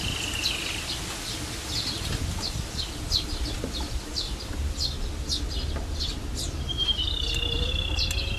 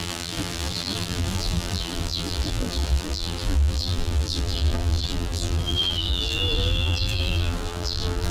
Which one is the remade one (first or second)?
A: second